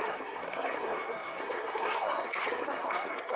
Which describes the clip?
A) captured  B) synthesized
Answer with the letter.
B